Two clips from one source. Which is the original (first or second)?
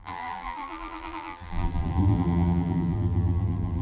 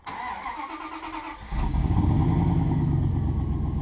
second